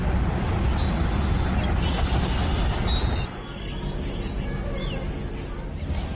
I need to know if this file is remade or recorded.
recorded